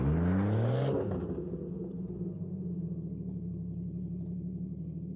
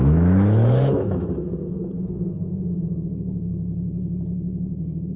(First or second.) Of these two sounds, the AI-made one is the second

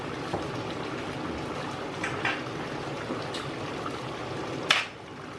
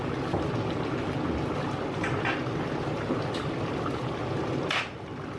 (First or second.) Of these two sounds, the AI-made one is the second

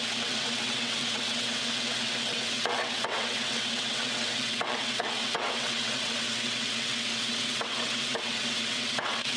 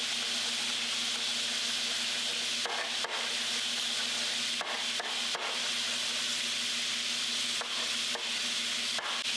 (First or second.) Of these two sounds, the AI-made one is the first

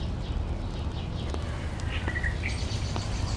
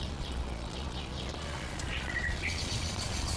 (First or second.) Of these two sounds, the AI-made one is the second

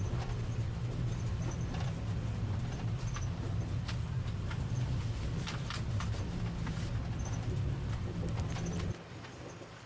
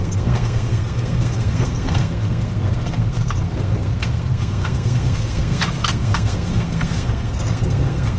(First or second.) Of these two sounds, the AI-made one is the second